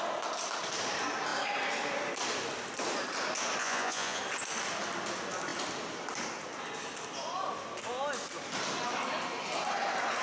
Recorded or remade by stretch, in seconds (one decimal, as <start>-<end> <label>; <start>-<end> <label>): 0.0-3.6 recorded; 3.6-4.2 remade; 4.2-10.2 recorded